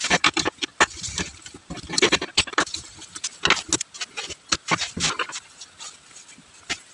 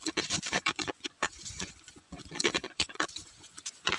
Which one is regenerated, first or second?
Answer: second